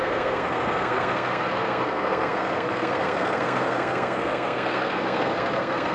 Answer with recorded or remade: remade